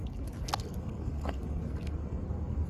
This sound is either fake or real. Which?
fake